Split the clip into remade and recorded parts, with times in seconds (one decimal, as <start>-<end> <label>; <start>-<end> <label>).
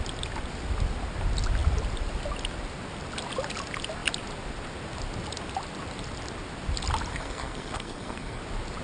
0.0-7.1 recorded; 7.1-8.4 remade; 8.4-8.8 recorded